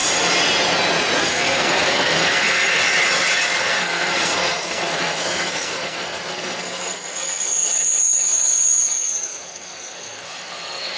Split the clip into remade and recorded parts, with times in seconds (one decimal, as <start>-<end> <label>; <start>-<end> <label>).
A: 0.0-1.2 recorded; 1.2-2.8 remade; 2.8-3.6 recorded; 3.6-11.0 remade